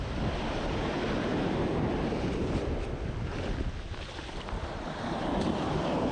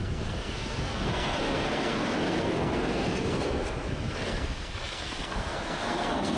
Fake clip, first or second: second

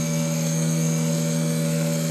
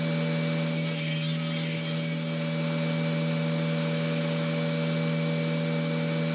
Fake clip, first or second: first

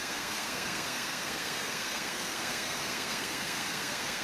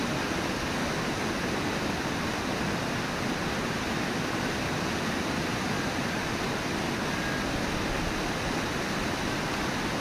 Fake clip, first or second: first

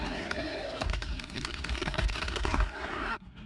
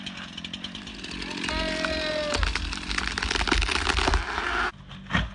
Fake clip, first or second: first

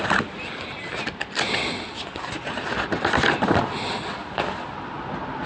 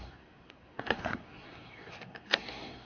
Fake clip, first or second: second